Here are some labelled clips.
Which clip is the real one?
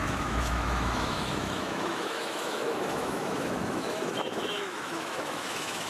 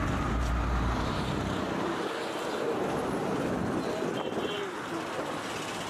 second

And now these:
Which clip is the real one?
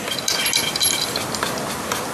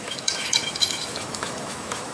first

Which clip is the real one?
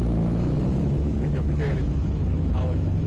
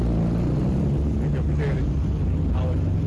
second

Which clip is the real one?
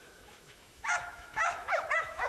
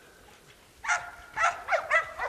second